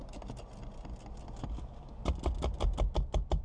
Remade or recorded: recorded